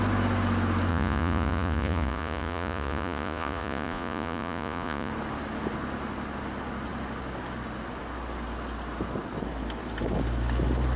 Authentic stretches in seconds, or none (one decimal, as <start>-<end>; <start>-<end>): 0.0-0.9; 5.1-11.0